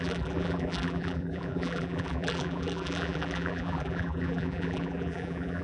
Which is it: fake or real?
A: fake